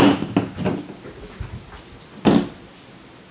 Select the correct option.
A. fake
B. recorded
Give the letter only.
B